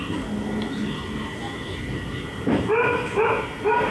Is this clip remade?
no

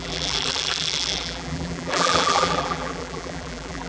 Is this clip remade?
yes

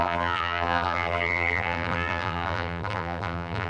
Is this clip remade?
yes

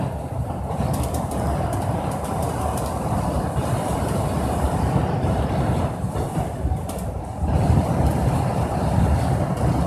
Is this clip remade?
yes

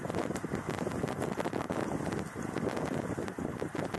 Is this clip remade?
no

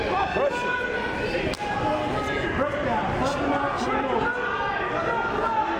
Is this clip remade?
no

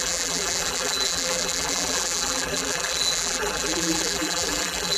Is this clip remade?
yes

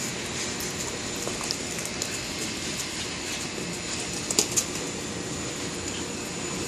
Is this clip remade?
no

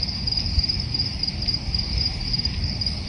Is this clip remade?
yes